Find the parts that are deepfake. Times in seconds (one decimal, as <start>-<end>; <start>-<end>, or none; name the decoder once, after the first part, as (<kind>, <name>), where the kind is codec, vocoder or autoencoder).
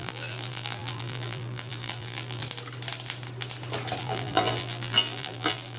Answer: 0.0-2.4 (vocoder, BigVGAN v2); 4.0-5.8